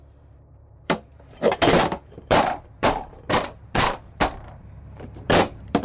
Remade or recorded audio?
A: remade